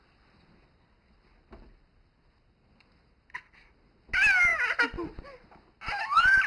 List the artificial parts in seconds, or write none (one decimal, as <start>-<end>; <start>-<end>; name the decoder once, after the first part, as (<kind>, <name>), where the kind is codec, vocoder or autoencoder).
none

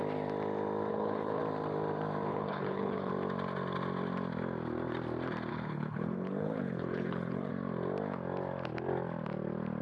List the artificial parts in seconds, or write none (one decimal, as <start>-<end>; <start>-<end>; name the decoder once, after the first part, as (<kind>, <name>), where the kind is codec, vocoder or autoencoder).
0.9-1.4 (codec, HILCodec); 2.3-3.1; 5.5-7.5

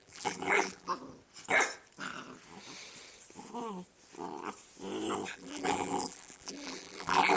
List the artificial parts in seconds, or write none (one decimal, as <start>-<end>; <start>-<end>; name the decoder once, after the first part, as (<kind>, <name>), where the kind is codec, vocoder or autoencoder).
0.0-0.9 (vocoder, BigVGAN v2); 5.3-7.4

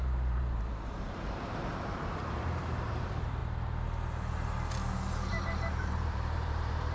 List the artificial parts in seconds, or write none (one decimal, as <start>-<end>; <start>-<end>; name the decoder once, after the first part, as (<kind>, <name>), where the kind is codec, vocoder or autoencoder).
0.0-3.4 (vocoder, BigVGAN v2); 5.3-6.9

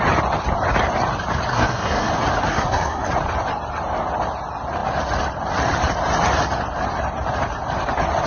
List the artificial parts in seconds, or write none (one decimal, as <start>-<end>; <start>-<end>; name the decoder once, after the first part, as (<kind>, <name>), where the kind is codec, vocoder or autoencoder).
1.5-2.1 (codec, SNAC); 2.5-3.1

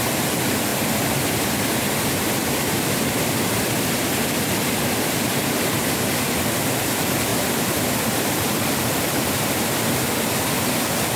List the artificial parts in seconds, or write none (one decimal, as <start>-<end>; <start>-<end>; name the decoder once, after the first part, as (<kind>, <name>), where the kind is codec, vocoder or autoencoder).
2.4-6.8 (vocoder, BigVGAN v2); 7.3-9.0